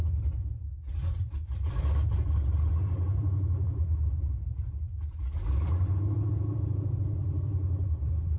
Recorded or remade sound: remade